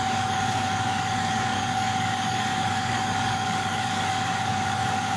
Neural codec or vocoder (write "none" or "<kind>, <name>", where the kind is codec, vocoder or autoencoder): codec, DAC